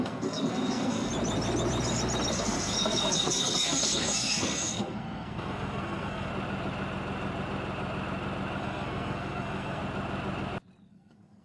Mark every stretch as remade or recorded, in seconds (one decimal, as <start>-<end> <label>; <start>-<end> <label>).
0.0-1.1 remade; 1.1-2.3 recorded; 2.3-6.3 remade; 6.3-8.6 recorded; 8.6-9.8 remade; 9.8-10.9 recorded; 10.9-11.4 remade